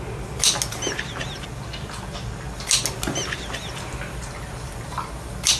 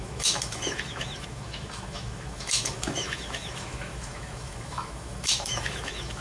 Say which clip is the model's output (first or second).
second